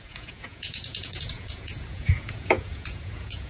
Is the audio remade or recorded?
remade